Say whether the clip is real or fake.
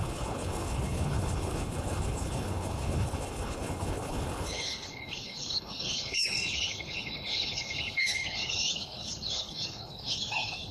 fake